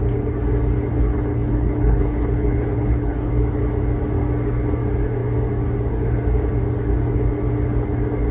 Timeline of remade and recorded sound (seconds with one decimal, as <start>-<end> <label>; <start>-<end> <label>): 0.0-0.9 recorded; 0.9-3.3 remade; 3.3-8.3 recorded